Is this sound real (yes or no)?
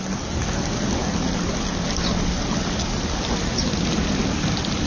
yes